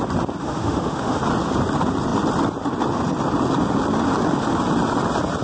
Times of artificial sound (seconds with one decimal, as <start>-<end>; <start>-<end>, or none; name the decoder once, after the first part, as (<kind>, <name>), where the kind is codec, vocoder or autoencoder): 0.4-1.2 (autoencoder, DAC-VAE)